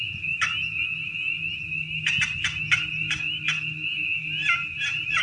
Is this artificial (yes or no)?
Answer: no